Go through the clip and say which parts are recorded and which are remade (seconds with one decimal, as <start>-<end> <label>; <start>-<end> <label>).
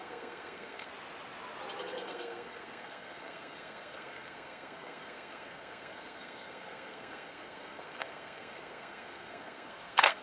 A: 0.0-0.9 remade; 0.9-1.8 recorded; 1.8-10.2 remade